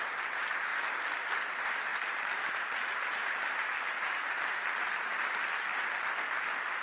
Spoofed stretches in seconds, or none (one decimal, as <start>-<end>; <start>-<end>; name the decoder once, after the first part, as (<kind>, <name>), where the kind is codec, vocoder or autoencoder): 1.9-6.0 (vocoder, BigVGAN v2)